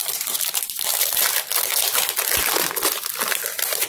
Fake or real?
fake